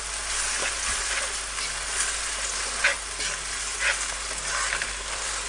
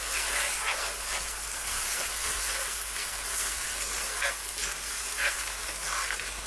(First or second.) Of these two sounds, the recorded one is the first